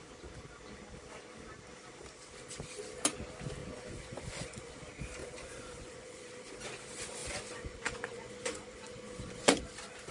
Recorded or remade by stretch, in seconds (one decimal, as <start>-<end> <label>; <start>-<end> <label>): 0.0-3.6 recorded; 3.6-4.7 remade; 4.7-5.2 recorded; 5.2-6.5 remade; 6.5-7.2 recorded; 7.2-9.6 remade; 9.6-10.1 recorded